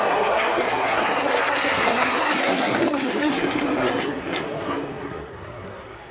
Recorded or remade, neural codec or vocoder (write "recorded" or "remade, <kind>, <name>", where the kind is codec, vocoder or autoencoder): remade, codec, SNAC